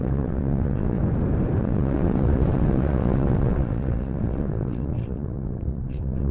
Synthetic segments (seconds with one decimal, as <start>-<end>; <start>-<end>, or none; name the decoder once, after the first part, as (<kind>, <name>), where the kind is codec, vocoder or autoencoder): 0.0-1.0 (vocoder, WaveNeXt); 1.6-6.3